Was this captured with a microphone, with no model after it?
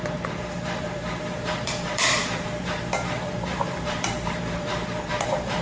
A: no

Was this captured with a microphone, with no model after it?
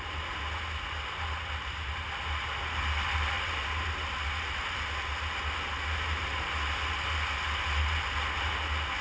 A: yes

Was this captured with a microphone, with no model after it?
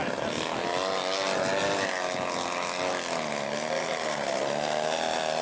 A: yes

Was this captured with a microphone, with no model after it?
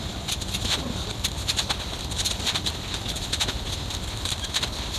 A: no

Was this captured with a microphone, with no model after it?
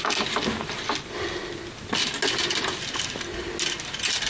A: yes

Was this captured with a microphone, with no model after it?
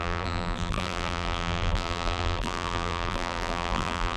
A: no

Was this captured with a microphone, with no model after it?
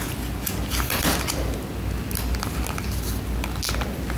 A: yes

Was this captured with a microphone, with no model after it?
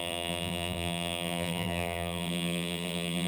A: no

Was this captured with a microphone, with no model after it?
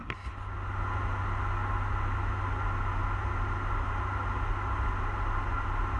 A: yes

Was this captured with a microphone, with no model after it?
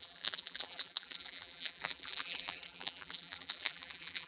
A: no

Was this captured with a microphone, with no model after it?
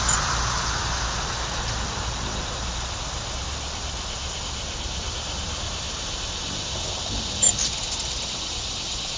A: no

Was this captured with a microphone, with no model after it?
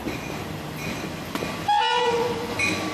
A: no